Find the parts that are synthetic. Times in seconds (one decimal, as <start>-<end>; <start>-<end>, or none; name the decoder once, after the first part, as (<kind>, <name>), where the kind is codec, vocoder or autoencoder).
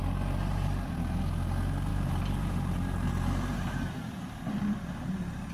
1.9-3.1 (vocoder, BigVGAN v2); 3.5-4.1